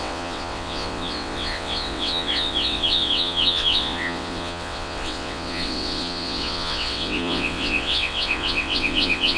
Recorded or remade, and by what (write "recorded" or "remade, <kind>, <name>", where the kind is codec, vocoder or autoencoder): remade, vocoder, WaveNeXt